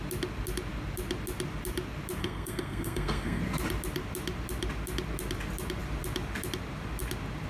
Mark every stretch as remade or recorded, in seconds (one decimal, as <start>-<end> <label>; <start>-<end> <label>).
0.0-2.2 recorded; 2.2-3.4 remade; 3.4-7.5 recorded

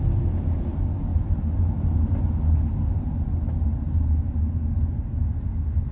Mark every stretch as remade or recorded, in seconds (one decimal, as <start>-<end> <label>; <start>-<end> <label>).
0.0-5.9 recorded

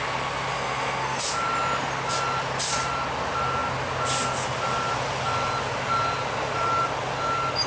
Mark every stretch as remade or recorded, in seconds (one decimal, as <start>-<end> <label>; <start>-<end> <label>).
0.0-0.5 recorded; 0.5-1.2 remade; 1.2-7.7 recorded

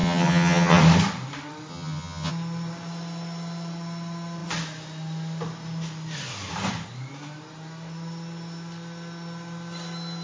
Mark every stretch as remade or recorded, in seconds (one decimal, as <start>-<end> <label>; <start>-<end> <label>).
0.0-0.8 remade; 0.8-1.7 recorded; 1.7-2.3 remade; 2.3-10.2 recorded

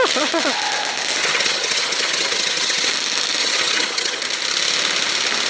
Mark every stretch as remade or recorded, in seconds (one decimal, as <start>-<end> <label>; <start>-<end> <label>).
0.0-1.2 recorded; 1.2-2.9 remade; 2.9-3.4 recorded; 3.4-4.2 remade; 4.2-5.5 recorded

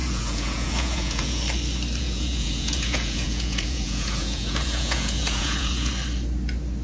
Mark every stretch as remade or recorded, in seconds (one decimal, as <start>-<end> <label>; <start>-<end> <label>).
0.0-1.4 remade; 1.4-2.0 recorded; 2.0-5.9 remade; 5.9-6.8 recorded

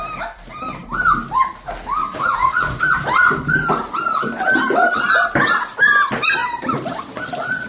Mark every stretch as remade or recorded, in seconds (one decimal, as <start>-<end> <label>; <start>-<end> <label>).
0.0-2.0 recorded; 2.0-2.8 remade; 2.8-7.7 recorded